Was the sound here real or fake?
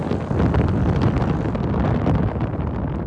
real